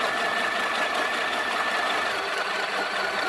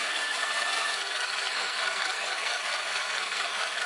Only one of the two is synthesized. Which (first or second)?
second